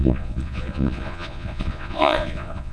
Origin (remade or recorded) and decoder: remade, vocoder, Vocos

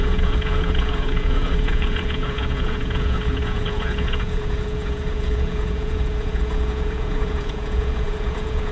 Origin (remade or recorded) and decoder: remade, vocoder, Vocos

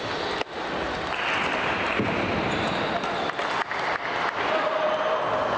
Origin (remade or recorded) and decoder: recorded